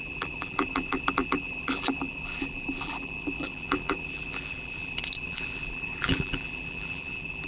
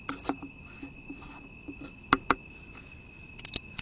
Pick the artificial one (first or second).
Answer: first